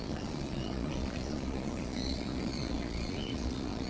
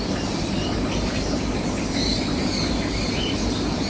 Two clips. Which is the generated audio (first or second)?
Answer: first